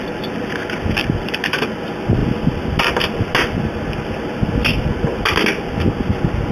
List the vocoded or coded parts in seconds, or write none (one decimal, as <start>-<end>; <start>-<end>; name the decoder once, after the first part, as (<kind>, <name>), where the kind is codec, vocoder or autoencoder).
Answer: none